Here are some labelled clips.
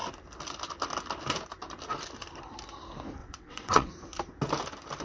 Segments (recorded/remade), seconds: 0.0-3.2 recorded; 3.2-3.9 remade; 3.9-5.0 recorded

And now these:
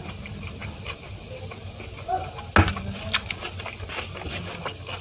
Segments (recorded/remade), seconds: 0.0-5.0 recorded

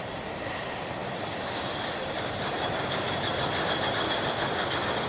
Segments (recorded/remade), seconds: 0.0-5.1 recorded

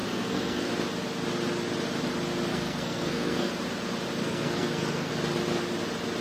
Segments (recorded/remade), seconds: 0.0-0.7 remade; 0.7-2.5 recorded; 2.5-3.5 remade; 3.5-4.2 recorded; 4.2-5.1 remade; 5.1-6.2 recorded

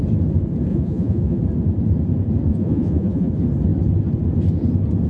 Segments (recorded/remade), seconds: 0.0-0.7 recorded; 0.7-1.4 remade; 1.4-2.5 recorded; 2.5-3.3 remade; 3.3-5.1 recorded